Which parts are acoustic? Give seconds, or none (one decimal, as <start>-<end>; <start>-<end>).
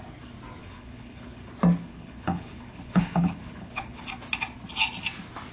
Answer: 0.0-0.6; 1.5-1.9; 4.0-5.5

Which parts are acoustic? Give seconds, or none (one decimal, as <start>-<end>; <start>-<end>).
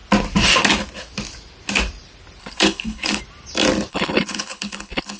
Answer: 0.0-2.4; 3.2-3.9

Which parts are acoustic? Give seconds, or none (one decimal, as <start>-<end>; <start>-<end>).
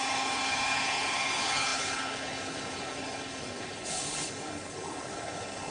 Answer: none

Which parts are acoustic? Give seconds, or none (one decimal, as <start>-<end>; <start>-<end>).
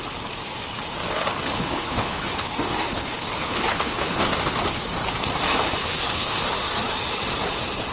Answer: 0.0-1.5; 4.2-5.8; 6.4-7.9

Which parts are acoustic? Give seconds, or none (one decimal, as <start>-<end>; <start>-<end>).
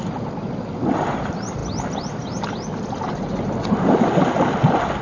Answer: 0.0-5.0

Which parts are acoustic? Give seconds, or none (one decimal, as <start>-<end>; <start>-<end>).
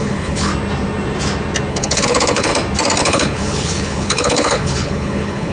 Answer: 0.5-1.7; 2.5-3.0